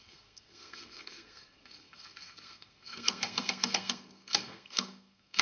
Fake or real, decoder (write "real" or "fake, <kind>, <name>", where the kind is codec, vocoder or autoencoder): fake, codec, SNAC